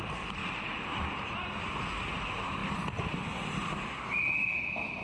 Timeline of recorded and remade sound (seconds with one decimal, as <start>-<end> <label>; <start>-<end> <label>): 0.0-0.4 recorded; 0.4-1.3 remade; 1.3-2.6 recorded; 2.6-3.7 remade; 3.7-5.0 recorded